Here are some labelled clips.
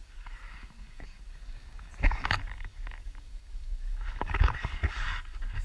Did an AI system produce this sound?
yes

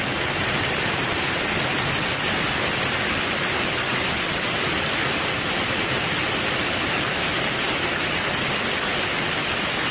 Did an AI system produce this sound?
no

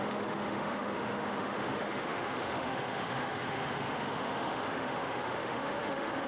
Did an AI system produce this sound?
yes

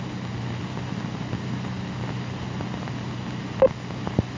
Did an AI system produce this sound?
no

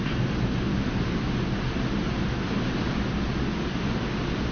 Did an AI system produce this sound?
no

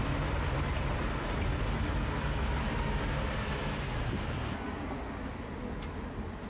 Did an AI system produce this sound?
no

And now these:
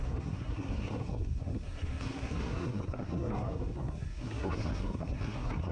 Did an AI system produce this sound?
yes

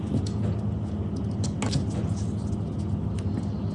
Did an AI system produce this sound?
no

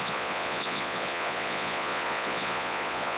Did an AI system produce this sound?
yes